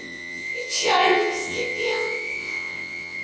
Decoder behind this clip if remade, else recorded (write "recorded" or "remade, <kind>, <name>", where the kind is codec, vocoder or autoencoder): remade, vocoder, WaveNeXt